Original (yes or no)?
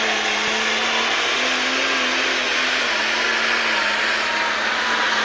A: yes